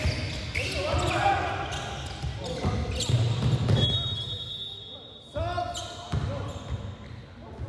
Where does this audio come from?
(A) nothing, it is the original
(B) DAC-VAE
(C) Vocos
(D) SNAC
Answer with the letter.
A